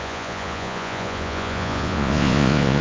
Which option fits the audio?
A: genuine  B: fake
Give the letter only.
B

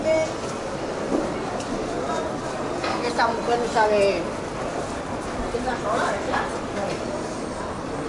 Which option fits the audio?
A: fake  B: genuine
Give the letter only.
B